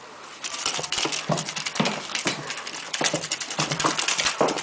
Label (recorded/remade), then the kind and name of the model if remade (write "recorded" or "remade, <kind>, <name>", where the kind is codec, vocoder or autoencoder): remade, vocoder, BigVGAN v2